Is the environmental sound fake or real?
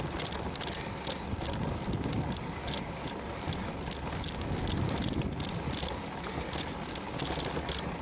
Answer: real